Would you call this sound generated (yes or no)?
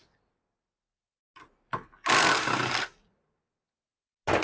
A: no